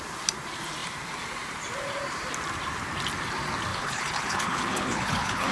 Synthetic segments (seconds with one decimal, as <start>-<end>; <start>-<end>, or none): 3.7-5.5